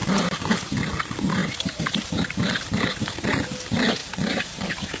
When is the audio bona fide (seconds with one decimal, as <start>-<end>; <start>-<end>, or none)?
0.0-1.4; 2.1-4.0